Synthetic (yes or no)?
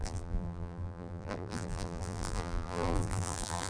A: yes